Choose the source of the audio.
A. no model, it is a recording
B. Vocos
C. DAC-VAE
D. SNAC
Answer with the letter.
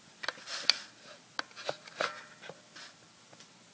A